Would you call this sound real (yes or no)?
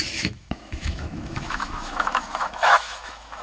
no